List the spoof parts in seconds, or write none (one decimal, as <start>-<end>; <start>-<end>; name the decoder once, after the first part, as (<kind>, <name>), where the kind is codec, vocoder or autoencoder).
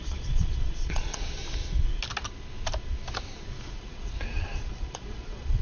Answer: 0.0-1.4 (vocoder, Vocos); 3.8-5.6